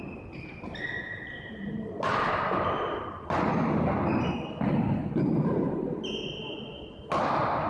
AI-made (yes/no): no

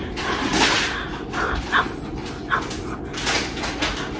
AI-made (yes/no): no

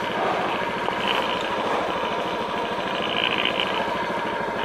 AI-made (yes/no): no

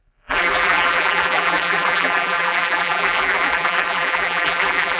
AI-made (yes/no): yes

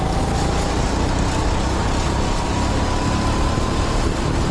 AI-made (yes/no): no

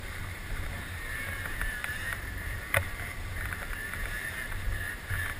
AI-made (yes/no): yes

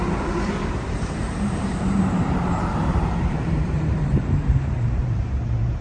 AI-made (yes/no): yes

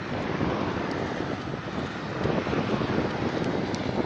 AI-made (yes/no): no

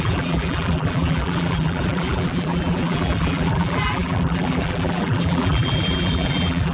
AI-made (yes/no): yes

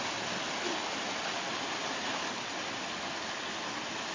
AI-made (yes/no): no